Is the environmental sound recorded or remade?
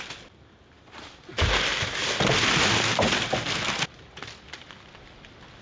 recorded